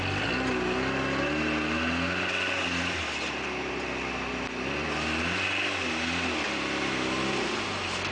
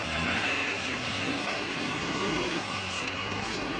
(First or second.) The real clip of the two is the first